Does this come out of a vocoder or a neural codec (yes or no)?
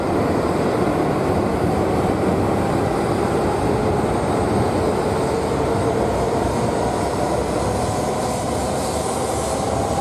no